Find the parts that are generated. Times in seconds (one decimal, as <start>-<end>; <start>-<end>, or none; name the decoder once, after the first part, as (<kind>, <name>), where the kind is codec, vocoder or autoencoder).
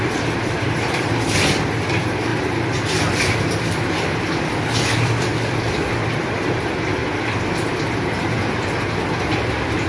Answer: 0.0-7.0 (vocoder, BigVGAN v2); 9.5-9.9